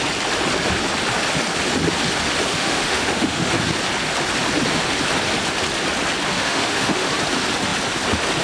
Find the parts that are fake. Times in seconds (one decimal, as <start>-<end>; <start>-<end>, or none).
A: 2.5-3.5; 6.3-7.1